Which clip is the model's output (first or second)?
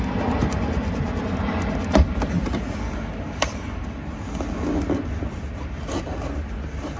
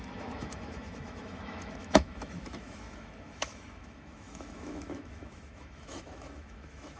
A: second